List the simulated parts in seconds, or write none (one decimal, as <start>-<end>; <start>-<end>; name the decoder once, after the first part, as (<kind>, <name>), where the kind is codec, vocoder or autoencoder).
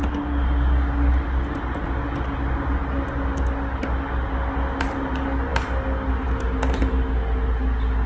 none